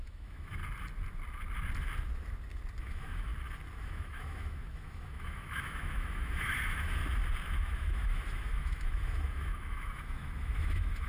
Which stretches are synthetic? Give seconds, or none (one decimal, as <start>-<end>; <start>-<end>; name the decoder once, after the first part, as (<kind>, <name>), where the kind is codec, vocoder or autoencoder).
0.0-0.6 (autoencoder, DAC-VAE); 2.8-3.3; 3.8-7.0; 7.6-11.1